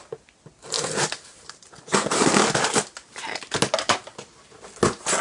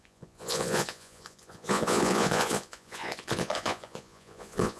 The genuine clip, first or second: first